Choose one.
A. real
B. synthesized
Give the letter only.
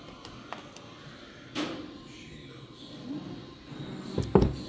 A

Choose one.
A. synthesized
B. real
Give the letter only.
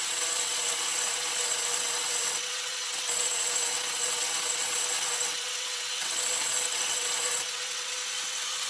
A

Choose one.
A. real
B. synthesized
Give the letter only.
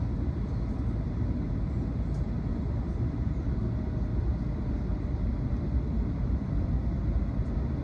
A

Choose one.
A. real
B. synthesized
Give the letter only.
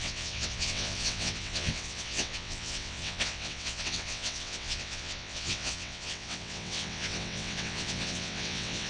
B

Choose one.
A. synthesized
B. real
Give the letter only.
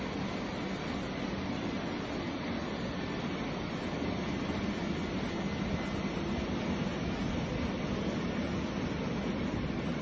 B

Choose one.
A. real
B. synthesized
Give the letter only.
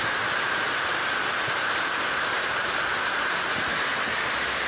A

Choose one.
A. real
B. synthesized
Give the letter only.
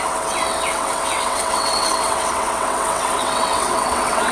B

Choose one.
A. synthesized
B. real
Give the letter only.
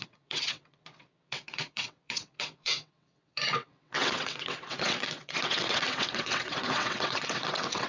A